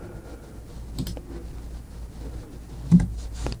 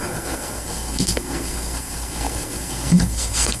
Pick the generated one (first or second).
second